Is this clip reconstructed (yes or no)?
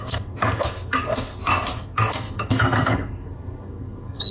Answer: yes